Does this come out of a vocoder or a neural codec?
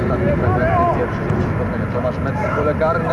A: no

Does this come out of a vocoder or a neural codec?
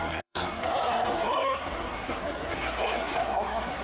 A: yes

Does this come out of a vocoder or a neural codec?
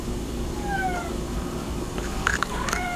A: yes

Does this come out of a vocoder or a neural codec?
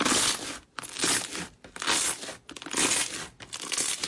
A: no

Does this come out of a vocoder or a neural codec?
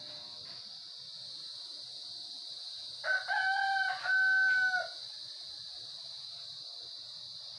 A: no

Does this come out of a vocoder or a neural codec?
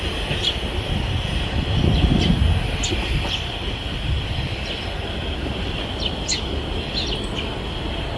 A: no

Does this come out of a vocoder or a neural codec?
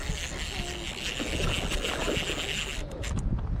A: no